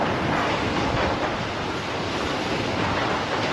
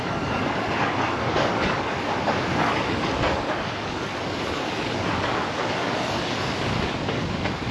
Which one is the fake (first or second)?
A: second